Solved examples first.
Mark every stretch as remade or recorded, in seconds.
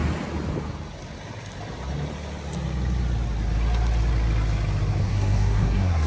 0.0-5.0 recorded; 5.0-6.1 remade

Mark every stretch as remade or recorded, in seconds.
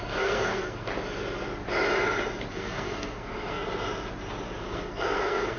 0.0-0.9 remade; 0.9-2.5 recorded; 2.5-3.6 remade; 3.6-4.6 recorded; 4.6-5.6 remade